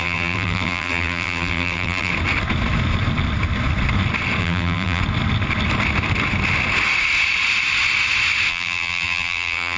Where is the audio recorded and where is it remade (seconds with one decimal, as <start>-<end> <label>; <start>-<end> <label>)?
0.0-2.1 remade; 2.1-4.4 recorded; 4.4-5.0 remade; 5.0-8.5 recorded; 8.5-9.8 remade